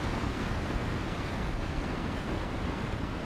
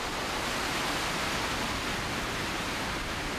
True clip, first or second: second